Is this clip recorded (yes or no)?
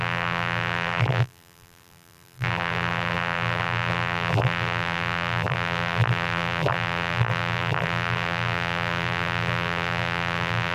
no